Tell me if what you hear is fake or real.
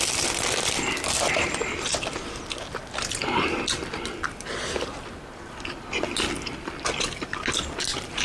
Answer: real